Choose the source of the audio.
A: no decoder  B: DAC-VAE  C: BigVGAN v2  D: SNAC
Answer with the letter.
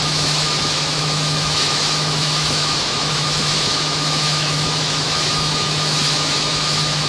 B